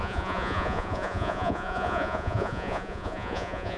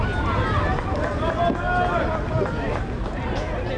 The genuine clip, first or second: second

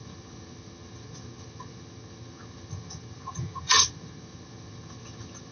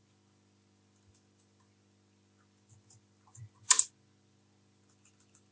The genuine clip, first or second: second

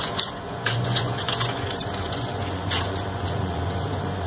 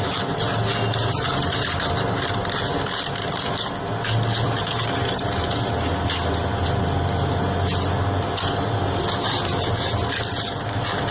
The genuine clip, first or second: second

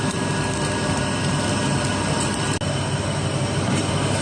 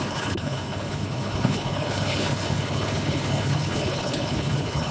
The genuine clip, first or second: first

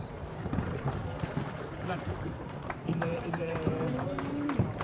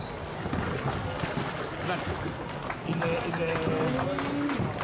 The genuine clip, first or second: second